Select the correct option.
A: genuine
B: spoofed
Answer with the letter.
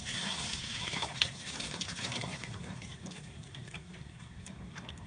B